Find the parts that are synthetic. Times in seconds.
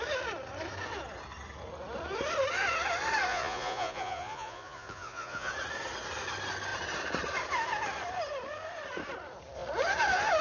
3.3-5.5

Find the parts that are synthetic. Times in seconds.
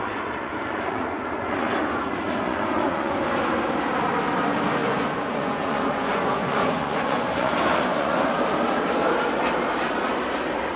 0.0-3.2; 4.8-8.3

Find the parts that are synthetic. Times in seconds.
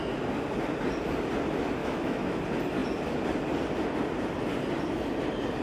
1.8-2.4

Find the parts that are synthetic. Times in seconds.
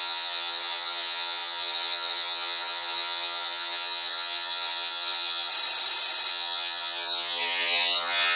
0.0-5.5; 6.3-8.4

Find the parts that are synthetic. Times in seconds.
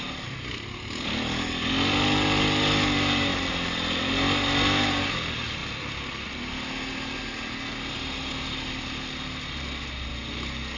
none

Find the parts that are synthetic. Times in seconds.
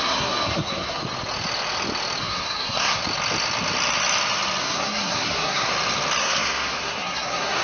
0.0-1.0; 2.2-3.0; 4.6-5.7; 6.2-7.6